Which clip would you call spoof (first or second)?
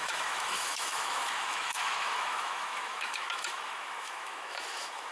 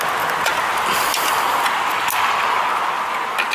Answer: first